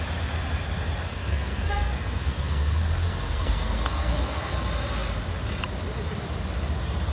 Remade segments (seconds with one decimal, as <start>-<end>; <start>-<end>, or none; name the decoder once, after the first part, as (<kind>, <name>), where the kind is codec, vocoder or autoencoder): 1.1-4.5 (codec, SNAC)